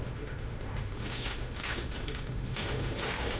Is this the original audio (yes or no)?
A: no